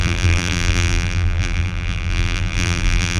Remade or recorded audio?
remade